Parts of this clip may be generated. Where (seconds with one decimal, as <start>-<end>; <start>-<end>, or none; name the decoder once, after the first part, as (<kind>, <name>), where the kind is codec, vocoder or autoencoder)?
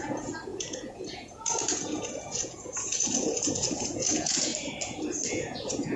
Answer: 0.0-4.5 (vocoder, Vocos); 5.3-6.0